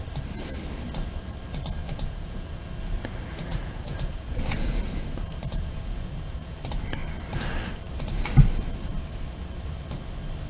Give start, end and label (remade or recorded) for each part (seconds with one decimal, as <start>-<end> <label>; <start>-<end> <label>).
0.0-1.8 recorded; 1.8-2.5 remade; 2.5-3.4 recorded; 3.4-6.6 remade; 6.6-10.5 recorded